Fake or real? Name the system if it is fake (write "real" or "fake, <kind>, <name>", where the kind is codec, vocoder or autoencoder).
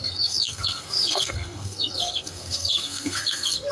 fake, codec, SNAC